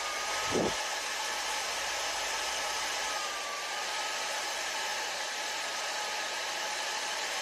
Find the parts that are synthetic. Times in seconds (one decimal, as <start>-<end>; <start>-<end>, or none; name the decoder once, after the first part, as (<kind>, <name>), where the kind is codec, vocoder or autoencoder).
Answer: none